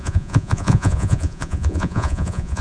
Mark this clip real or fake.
fake